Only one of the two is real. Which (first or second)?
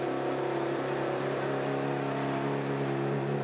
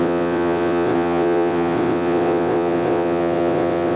first